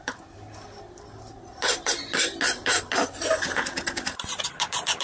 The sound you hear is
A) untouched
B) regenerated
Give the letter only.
A